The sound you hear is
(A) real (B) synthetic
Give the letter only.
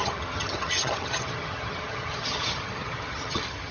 B